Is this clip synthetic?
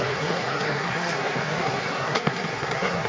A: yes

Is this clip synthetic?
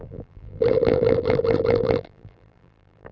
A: yes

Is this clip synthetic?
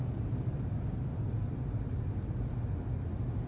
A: no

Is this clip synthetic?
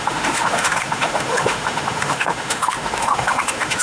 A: yes